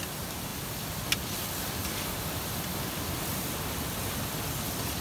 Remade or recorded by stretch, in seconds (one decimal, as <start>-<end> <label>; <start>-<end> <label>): 0.0-0.5 recorded; 0.5-3.5 remade; 3.5-5.0 recorded